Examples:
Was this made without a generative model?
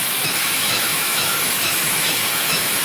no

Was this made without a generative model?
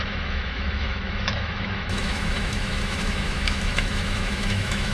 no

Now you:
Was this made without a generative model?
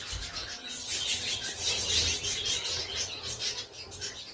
yes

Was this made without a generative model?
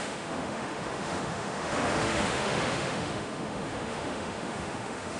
no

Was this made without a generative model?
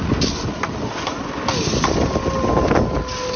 yes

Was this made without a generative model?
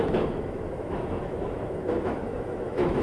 no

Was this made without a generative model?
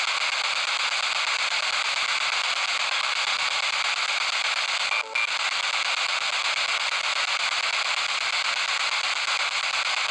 yes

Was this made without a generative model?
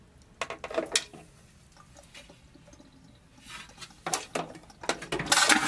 yes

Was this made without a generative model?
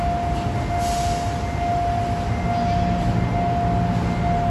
yes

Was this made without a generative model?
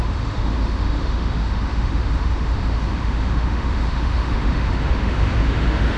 no